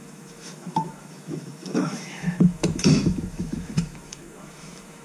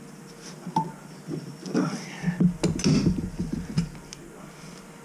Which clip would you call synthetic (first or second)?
first